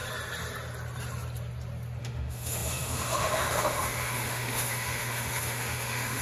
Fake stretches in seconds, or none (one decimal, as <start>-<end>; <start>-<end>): 2.0-6.2